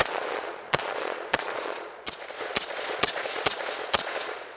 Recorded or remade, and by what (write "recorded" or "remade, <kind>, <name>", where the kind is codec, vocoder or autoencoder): remade, vocoder, Vocos